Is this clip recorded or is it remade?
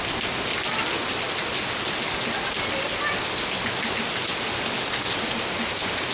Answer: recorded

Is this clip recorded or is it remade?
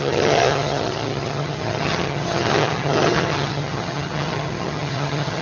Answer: remade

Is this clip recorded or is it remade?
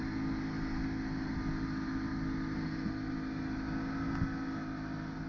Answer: recorded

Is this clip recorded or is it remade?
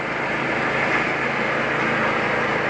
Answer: recorded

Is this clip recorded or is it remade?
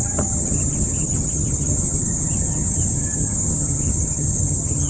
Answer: remade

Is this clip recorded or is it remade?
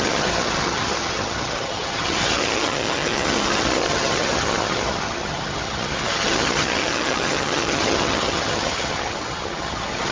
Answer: remade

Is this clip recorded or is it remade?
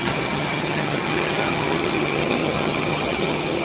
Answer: remade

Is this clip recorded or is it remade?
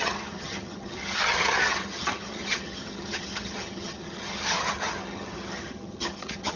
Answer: remade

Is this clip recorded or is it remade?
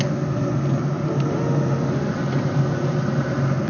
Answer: recorded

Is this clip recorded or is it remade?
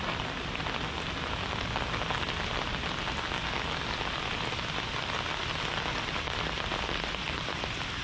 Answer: recorded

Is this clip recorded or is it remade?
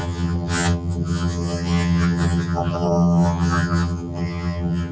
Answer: remade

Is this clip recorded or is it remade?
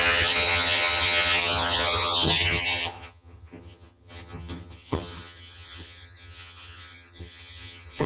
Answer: remade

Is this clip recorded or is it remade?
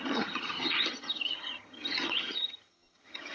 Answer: remade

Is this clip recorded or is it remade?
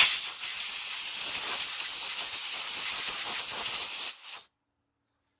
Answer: recorded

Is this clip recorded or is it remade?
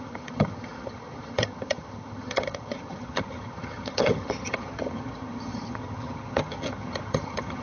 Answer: remade